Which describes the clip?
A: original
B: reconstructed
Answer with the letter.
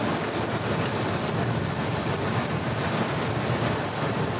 A